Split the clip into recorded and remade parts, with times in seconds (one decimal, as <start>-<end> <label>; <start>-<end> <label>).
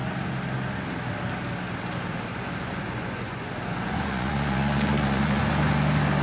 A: 0.0-2.3 recorded; 2.3-5.4 remade; 5.4-6.2 recorded